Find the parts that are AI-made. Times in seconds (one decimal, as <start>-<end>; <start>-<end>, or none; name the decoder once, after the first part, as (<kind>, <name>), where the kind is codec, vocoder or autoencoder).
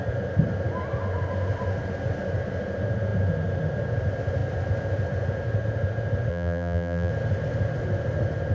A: 6.3-7.1 (vocoder, BigVGAN v2)